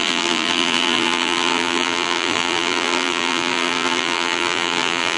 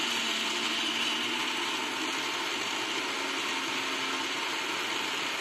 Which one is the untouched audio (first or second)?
second